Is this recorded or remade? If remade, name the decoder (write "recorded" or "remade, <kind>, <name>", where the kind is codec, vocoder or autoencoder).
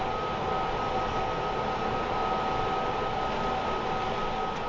recorded